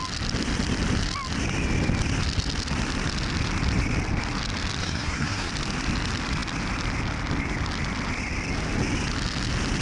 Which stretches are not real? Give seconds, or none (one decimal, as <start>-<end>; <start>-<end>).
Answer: 4.8-5.5

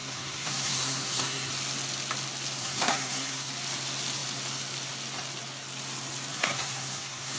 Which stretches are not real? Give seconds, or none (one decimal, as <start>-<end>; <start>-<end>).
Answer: 0.0-1.5; 2.6-3.5; 6.3-7.4